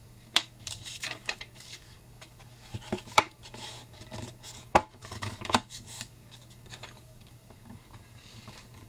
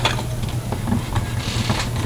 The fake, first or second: first